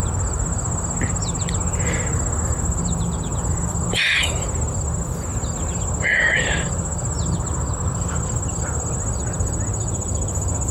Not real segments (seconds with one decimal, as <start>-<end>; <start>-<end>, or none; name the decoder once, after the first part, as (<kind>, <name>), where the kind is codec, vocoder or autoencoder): none